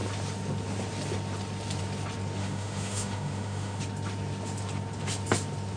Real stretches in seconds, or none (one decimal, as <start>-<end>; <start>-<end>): 0.0-2.4; 3.8-5.8